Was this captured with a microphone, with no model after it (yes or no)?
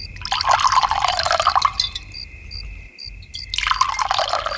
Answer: yes